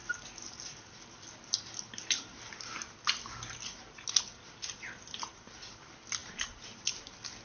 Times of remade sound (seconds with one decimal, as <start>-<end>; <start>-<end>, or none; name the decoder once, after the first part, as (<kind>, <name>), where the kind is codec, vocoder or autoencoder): none